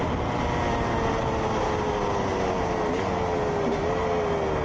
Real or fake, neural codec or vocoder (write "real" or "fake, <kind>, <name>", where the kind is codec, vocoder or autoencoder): real